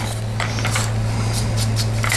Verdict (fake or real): real